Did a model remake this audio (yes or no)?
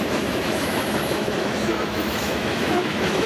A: yes